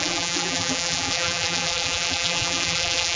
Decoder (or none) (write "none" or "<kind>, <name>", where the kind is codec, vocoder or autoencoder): vocoder, BigVGAN v2